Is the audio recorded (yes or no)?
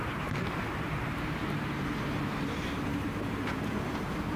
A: no